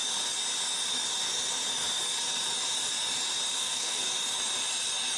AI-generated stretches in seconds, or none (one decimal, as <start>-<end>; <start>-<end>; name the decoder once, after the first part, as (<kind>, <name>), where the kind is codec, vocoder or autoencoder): 3.6-4.1 (codec, SNAC)